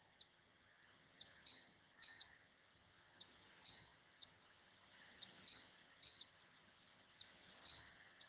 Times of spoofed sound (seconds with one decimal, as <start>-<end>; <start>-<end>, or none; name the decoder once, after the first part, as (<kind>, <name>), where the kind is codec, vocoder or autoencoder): 0.0-8.3 (vocoder, HiFi-GAN)